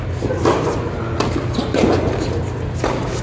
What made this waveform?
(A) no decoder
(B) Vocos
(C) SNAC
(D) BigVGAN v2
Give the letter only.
A